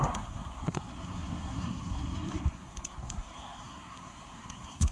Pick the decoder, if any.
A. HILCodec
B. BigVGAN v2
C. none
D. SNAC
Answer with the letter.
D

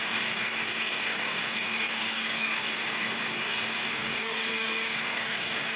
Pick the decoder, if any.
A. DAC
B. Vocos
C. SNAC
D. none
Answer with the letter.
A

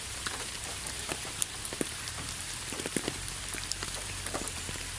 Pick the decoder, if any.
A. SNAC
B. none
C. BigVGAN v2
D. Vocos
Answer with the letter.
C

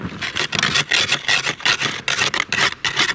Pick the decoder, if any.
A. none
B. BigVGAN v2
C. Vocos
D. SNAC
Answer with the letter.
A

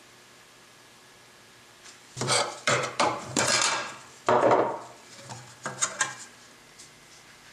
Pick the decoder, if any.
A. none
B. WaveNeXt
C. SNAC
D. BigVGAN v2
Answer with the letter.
D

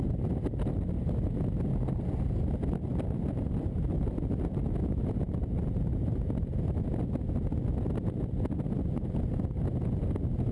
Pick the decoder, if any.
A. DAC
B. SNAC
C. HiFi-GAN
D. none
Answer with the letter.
D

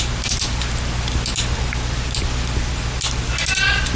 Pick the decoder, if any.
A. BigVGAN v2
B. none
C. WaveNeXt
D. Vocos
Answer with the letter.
B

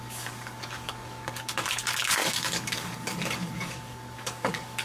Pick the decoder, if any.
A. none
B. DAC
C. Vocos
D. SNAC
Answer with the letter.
B